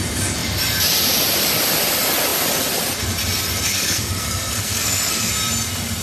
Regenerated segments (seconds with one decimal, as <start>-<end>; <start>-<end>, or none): 3.7-5.3